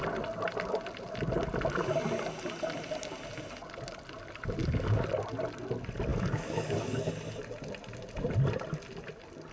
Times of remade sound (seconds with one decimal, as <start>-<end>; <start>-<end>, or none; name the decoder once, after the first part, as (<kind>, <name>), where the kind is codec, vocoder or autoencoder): 4.6-5.1 (codec, DAC); 6.1-7.1